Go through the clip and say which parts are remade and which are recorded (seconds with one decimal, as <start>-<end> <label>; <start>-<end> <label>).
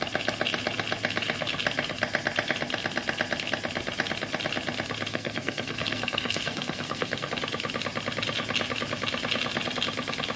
0.0-5.1 recorded; 5.1-7.3 remade; 7.3-10.4 recorded